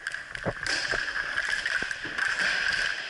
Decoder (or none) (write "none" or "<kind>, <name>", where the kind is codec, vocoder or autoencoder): none